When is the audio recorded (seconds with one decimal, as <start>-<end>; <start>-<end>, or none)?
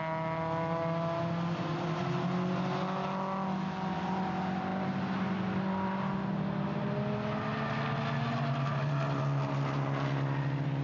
0.0-10.8